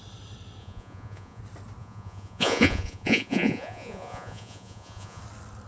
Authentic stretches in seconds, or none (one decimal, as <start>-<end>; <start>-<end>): 0.0-0.6; 1.4-1.8; 5.2-5.7